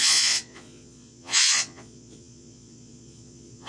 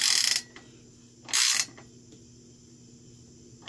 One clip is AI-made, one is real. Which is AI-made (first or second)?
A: first